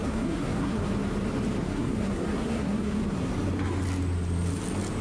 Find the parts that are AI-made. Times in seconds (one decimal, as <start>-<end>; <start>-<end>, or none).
0.0-0.9; 1.6-3.3